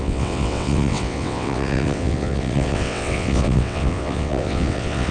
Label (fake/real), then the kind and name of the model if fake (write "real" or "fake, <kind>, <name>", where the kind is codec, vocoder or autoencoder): fake, vocoder, WaveNeXt